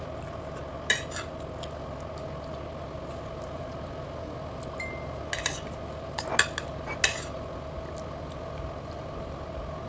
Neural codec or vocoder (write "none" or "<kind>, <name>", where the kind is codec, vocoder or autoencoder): none